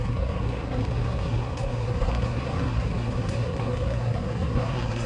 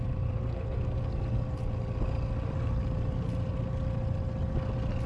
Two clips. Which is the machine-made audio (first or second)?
first